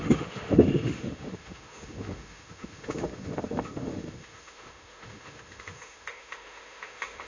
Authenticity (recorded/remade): remade